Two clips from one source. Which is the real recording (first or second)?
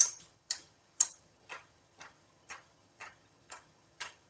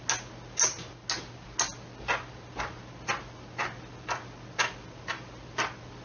second